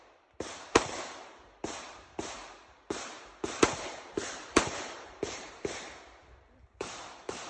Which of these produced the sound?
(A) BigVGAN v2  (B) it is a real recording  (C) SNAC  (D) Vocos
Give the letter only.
A